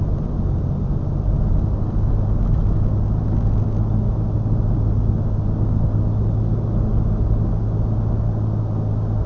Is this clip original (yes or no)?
yes